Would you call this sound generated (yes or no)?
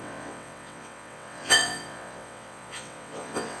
yes